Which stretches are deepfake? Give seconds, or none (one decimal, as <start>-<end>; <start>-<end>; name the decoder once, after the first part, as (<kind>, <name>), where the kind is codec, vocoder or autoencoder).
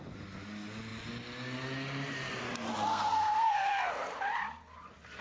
2.9-3.9 (codec, SNAC)